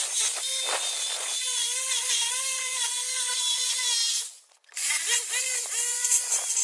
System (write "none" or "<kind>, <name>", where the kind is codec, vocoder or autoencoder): vocoder, BigVGAN v2